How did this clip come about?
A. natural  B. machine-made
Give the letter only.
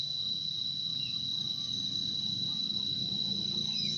A